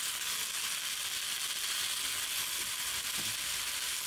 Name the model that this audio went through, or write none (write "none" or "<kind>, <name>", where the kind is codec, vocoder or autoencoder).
none